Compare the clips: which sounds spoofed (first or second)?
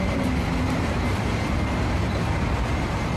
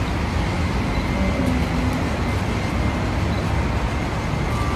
first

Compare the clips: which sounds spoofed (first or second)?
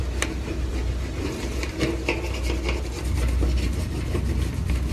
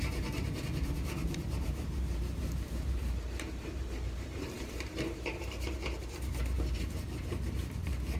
second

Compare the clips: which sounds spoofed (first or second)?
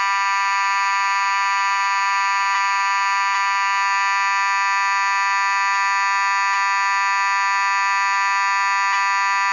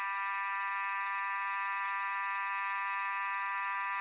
second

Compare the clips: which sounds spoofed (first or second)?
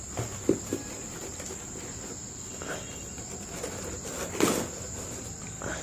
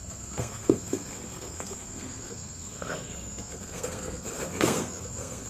second